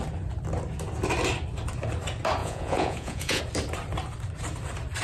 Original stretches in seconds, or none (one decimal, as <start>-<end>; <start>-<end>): 0.0-2.4; 3.4-5.0

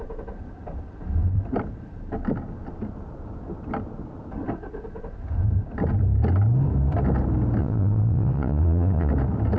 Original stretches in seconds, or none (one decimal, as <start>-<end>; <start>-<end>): 0.0-7.6; 9.1-9.6

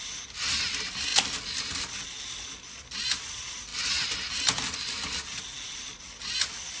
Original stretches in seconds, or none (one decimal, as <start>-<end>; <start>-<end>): 0.0-6.8

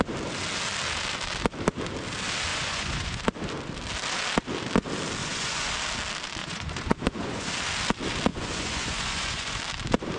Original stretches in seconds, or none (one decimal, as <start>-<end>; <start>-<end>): 0.0-2.5; 3.2-5.2; 5.7-6.4; 7.5-8.3; 9.6-10.2